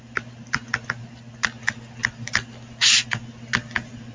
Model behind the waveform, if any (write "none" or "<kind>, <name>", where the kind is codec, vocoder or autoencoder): none